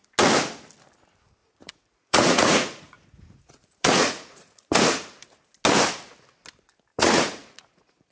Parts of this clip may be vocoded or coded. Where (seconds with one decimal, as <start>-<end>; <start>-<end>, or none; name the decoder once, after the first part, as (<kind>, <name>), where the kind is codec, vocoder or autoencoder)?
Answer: 1.4-4.8 (vocoder, Vocos); 6.9-8.1